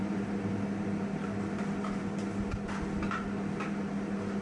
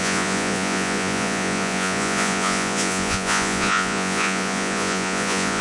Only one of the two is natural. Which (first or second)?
first